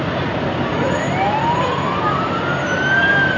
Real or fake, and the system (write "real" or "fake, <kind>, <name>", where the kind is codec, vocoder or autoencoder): real